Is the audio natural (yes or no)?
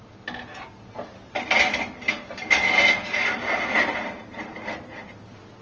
yes